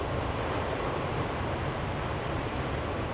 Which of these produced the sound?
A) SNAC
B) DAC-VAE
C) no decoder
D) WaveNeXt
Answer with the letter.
C